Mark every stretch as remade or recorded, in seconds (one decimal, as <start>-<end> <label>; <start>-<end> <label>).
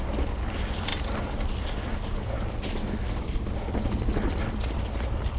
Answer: 0.0-5.4 recorded